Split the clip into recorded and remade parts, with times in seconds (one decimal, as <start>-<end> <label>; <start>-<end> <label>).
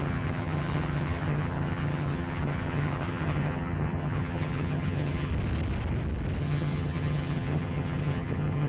0.0-5.3 remade; 5.3-6.4 recorded; 6.4-8.7 remade